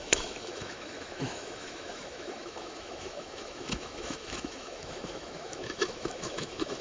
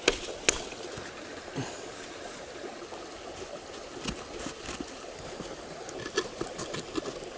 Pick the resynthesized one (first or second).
first